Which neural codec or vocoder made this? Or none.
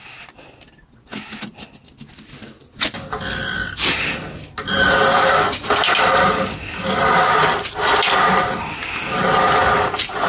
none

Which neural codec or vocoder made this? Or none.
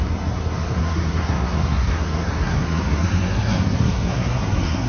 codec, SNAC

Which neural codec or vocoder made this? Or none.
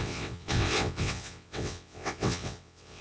vocoder, WaveNeXt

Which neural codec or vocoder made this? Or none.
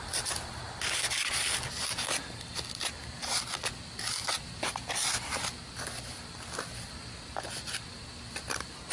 none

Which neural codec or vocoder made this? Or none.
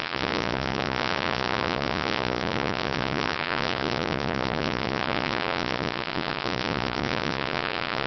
vocoder, Vocos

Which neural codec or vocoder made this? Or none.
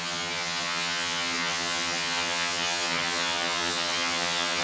vocoder, HiFi-GAN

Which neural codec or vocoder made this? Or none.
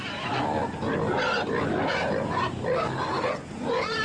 none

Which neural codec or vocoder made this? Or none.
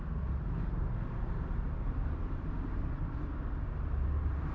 none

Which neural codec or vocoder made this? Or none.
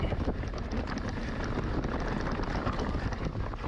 none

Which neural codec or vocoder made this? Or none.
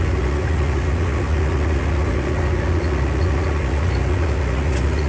vocoder, Vocos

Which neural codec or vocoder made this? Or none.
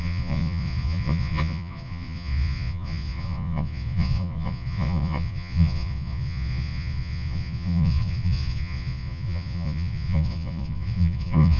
vocoder, Vocos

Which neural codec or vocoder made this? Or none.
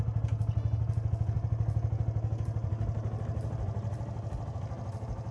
none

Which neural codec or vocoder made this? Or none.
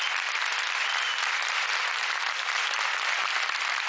none